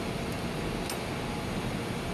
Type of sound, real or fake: real